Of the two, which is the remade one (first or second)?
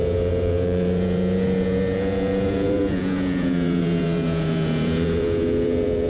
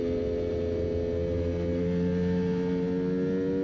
first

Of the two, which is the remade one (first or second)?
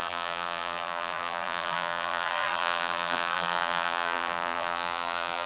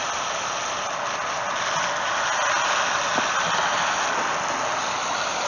first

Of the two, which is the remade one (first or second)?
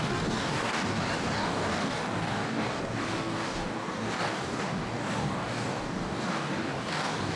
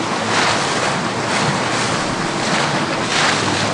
first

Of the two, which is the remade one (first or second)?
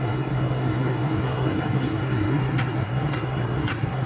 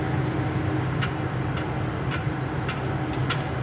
first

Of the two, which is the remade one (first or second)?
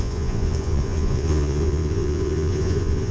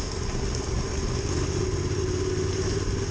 first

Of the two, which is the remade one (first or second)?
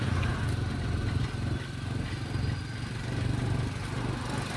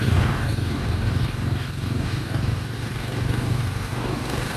second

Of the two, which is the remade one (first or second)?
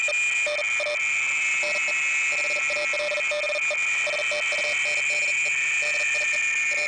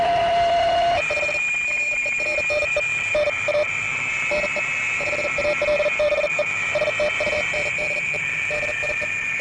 second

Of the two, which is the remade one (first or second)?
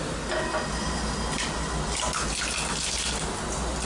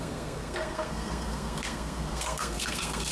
second